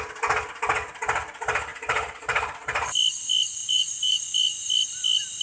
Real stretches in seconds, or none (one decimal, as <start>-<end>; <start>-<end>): 0.0-1.7; 2.9-3.6; 4.2-5.4